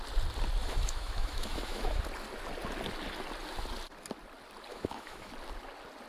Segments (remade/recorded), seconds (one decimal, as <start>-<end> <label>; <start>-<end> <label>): 0.0-0.6 recorded; 0.6-2.0 remade; 2.0-4.7 recorded; 4.7-5.3 remade; 5.3-6.1 recorded